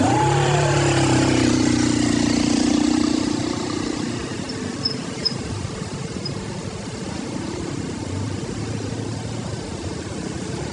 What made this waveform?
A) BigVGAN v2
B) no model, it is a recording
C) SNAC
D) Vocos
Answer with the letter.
A